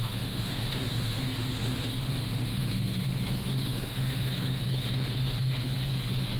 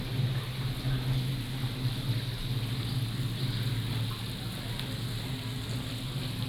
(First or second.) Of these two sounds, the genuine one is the second